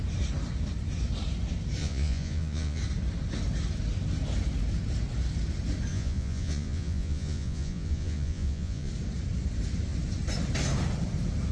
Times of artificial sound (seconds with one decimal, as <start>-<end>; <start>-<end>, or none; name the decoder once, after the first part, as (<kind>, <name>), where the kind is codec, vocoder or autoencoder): 1.8-2.8 (vocoder, Vocos); 5.9-8.9